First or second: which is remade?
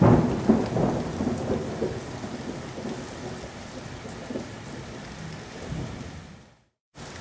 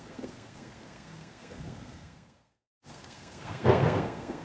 second